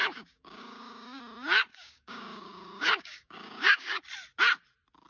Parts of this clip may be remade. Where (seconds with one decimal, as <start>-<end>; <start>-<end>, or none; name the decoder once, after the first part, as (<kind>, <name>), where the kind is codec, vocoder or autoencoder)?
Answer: 0.0-1.2 (codec, DAC); 1.7-4.0

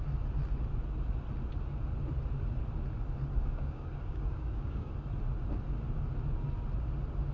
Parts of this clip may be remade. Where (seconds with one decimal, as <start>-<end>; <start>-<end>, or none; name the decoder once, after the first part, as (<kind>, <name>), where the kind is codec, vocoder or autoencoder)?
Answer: 3.3-4.9 (codec, DAC)

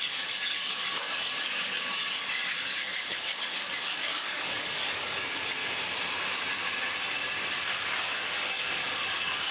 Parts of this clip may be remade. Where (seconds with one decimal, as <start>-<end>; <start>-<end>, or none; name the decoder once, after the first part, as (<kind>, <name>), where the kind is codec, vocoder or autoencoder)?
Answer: 0.0-5.6 (codec, DAC); 8.0-9.5

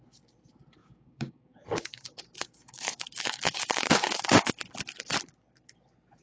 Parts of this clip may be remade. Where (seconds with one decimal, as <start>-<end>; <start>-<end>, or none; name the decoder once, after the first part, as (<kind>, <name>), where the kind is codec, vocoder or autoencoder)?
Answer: 0.8-4.5 (codec, DAC)